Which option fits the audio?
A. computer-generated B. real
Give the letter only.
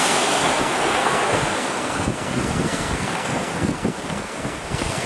A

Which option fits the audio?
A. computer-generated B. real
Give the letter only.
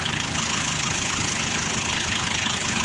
A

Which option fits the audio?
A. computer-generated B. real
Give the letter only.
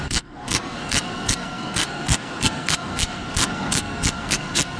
A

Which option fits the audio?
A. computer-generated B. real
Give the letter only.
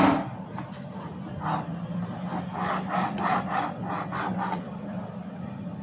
B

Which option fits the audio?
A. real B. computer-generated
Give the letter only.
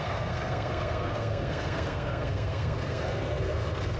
B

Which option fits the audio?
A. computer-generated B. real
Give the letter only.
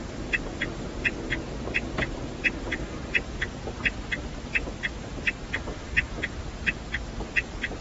B